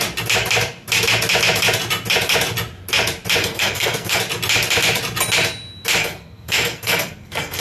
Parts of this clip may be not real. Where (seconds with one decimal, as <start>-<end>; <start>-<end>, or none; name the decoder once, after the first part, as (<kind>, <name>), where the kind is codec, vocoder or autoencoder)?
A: 3.4-4.2 (codec, SNAC); 6.0-7.6